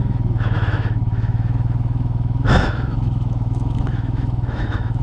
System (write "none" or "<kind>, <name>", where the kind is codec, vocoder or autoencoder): autoencoder, DAC-VAE